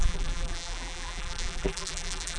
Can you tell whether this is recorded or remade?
remade